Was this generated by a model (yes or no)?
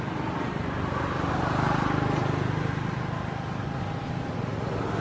no